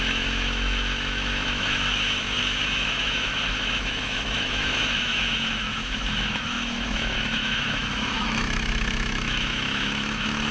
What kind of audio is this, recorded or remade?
remade